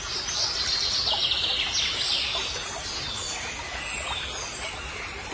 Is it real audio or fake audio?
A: real